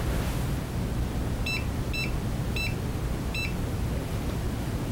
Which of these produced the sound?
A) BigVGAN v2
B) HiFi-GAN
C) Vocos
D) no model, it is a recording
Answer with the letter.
D